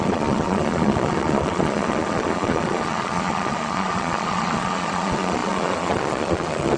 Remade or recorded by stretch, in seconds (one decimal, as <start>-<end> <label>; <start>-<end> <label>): 0.0-6.8 remade